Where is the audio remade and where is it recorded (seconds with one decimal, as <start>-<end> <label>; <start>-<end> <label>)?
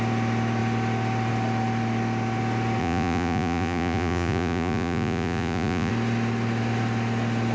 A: 0.0-2.8 recorded; 2.8-5.9 remade; 5.9-7.5 recorded